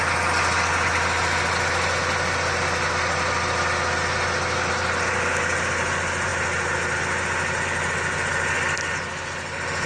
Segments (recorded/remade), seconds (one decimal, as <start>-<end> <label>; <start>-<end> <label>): 0.0-9.9 recorded

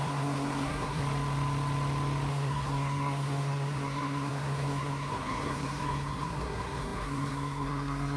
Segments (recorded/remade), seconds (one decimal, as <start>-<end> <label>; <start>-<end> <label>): 0.0-1.0 remade; 1.0-2.3 recorded; 2.3-8.2 remade

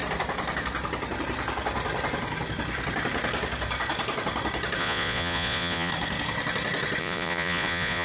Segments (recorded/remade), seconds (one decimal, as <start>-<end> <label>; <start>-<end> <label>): 0.0-4.8 recorded; 4.8-5.9 remade; 5.9-7.0 recorded; 7.0-8.0 remade

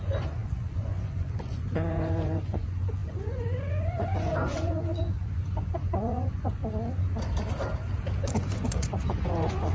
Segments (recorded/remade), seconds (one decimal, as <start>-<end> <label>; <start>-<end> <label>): 0.0-6.6 remade; 6.6-8.2 recorded; 8.2-9.7 remade

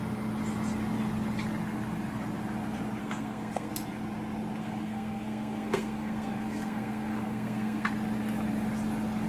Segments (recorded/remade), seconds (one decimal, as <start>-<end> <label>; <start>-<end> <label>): 0.0-3.0 recorded; 3.0-3.7 remade; 3.7-4.6 recorded; 4.6-7.9 remade; 7.9-9.3 recorded

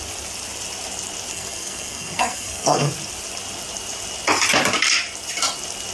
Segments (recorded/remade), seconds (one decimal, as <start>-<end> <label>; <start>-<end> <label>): 0.0-1.3 recorded; 1.3-2.9 remade; 2.9-5.9 recorded

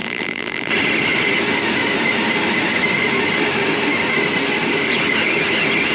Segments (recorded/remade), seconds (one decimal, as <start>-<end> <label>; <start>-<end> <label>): 0.0-0.7 remade; 0.7-5.9 recorded

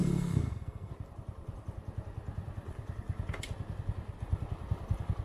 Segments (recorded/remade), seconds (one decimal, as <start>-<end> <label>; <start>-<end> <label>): 0.0-0.9 remade; 0.9-5.2 recorded